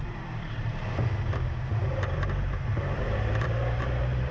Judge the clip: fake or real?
fake